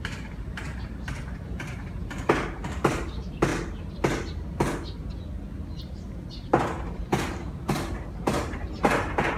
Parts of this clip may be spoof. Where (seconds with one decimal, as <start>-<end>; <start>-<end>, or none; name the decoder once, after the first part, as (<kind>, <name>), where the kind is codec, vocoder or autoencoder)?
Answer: 0.0-3.5 (vocoder, BigVGAN v2); 5.8-9.4